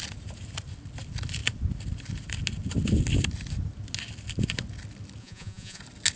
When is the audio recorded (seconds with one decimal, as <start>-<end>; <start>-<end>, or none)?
0.0-5.2; 5.8-6.2